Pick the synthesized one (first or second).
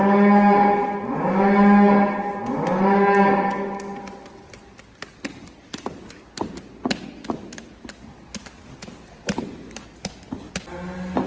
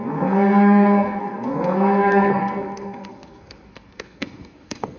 second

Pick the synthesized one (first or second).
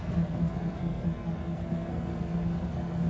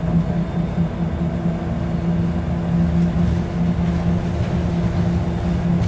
first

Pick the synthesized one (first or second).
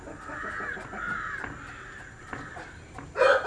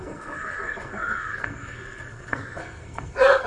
second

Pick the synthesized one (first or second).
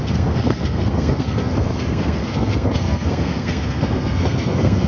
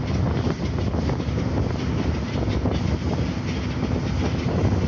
first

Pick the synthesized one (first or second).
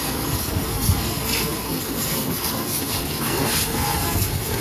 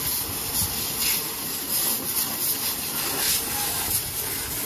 first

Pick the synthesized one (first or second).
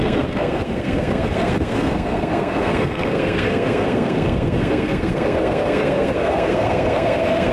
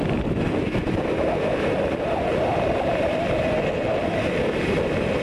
first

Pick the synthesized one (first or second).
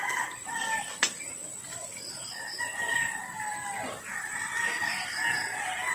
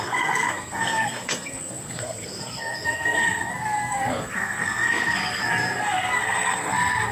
second